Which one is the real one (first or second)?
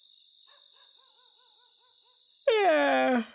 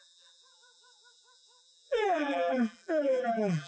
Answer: first